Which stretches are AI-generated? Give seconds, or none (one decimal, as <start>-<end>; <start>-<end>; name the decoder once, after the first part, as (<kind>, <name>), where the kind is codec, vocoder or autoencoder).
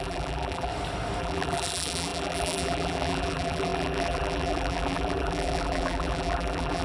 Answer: 0.0-0.7 (vocoder, BigVGAN v2); 1.2-6.8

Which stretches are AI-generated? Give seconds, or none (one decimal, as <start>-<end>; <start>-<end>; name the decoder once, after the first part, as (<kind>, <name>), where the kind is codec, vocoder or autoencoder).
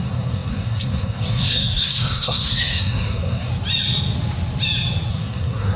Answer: 0.0-3.5 (codec, SNAC); 5.1-5.8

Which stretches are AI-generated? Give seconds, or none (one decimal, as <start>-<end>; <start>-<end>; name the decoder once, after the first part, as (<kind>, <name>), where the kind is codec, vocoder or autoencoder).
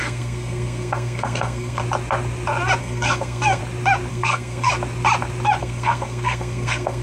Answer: 0.0-1.8 (codec, SNAC); 2.8-3.6; 4.1-4.7; 5.6-7.0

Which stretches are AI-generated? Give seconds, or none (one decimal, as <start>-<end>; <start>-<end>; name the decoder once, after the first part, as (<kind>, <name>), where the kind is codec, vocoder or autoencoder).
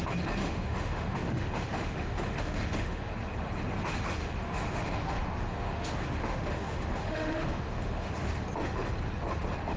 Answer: 0.4-3.1 (autoencoder, DAC-VAE); 4.2-8.1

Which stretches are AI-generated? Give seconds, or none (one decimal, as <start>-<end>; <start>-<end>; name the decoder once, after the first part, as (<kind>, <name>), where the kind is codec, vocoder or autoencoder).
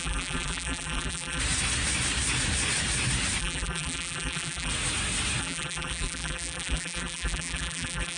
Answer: 0.0-1.4 (vocoder, BigVGAN v2); 3.4-4.7; 5.4-8.2